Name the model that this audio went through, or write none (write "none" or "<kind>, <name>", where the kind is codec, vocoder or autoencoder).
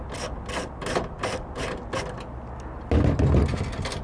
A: none